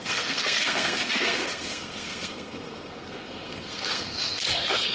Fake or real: fake